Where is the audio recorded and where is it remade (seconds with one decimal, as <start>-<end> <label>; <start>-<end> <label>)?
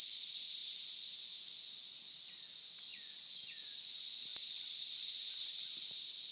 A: 0.0-2.9 recorded; 2.9-3.9 remade; 3.9-6.3 recorded